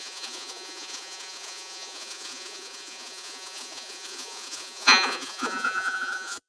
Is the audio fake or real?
fake